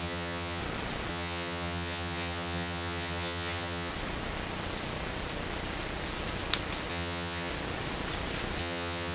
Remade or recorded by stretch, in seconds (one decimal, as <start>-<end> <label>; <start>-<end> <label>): 0.0-0.6 remade; 0.6-1.1 recorded; 1.1-3.9 remade; 3.9-6.9 recorded; 6.9-7.5 remade; 7.5-8.6 recorded; 8.6-9.1 remade